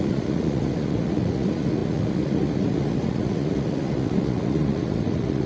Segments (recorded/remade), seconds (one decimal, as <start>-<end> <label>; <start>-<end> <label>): 0.0-5.5 remade